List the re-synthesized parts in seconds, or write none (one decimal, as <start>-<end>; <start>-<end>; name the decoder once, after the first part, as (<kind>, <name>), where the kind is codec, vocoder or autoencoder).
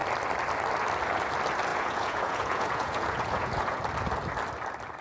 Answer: 1.7-3.8 (vocoder, Vocos)